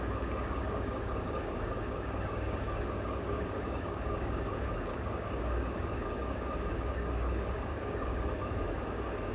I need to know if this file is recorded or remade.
remade